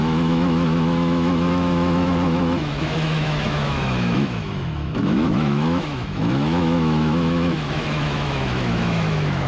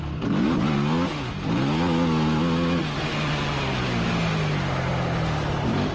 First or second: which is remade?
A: first